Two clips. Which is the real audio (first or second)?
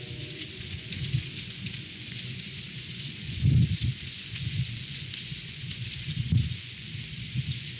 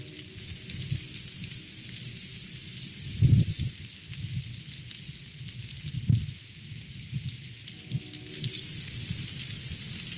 second